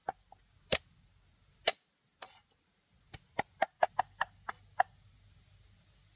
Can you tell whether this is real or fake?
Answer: real